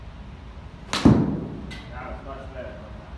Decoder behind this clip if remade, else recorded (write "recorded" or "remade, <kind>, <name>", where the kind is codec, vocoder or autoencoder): recorded